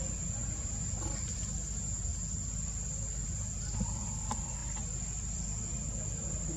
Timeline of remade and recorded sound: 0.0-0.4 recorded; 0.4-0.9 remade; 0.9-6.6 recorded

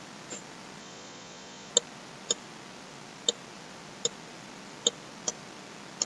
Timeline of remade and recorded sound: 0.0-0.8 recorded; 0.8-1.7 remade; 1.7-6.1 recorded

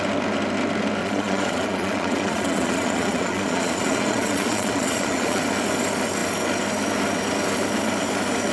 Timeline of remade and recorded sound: 0.0-1.0 recorded; 1.0-5.4 remade; 5.4-8.5 recorded

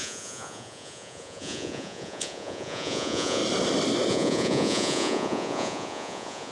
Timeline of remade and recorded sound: 0.0-3.4 remade; 3.4-4.1 recorded; 4.1-6.5 remade

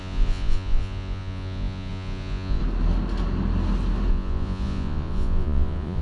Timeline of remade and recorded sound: 0.0-2.6 remade; 2.6-4.1 recorded; 4.1-6.0 remade

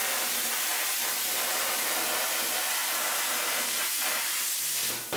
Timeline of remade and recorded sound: 0.0-5.2 recorded

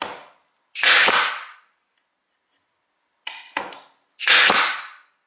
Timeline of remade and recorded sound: 0.0-5.3 recorded